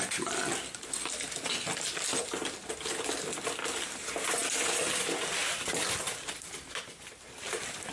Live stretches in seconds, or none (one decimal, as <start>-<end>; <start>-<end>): 0.0-7.9